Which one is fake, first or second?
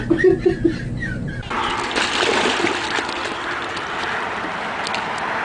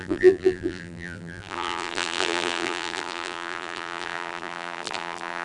second